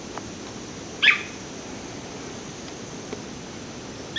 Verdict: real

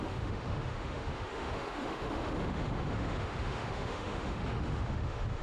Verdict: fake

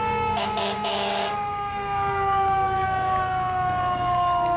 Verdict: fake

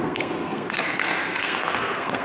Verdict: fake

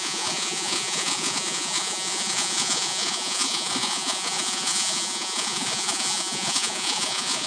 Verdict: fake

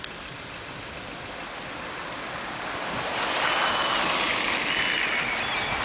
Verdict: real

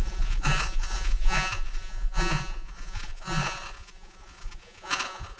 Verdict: fake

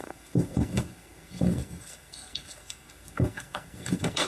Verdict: fake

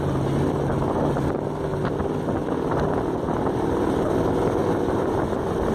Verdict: real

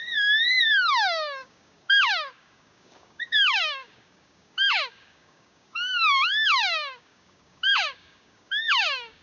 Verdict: fake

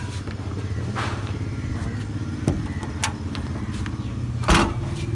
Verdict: real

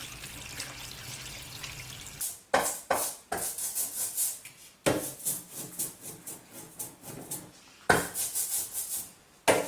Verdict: real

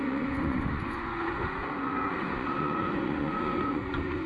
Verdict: fake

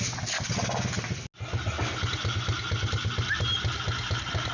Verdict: real